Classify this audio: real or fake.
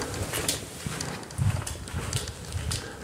real